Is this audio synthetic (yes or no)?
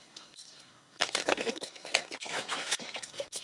yes